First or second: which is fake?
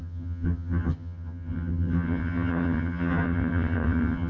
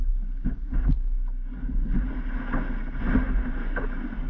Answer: first